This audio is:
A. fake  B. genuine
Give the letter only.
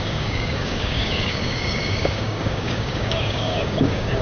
A